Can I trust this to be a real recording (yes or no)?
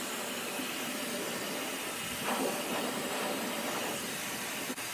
no